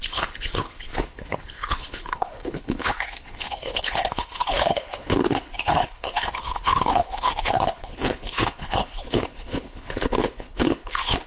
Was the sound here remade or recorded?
remade